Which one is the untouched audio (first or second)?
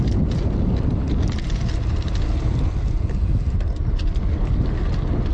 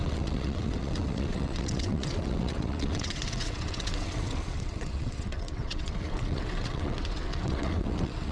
first